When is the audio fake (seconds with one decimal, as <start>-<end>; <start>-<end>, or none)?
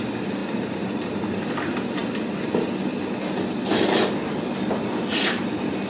none